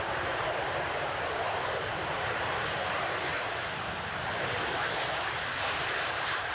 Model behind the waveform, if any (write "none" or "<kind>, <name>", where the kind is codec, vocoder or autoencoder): vocoder, BigVGAN v2